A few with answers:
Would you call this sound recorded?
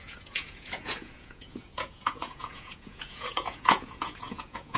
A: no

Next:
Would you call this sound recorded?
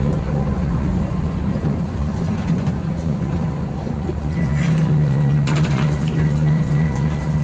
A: no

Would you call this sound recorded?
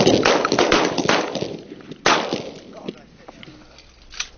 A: yes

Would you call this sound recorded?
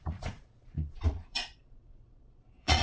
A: no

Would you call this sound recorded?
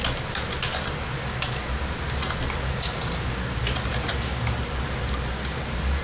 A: yes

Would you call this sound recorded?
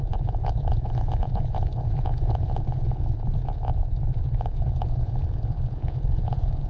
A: no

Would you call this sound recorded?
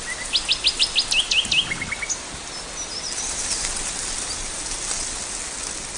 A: yes